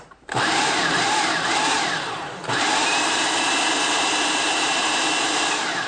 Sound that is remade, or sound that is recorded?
remade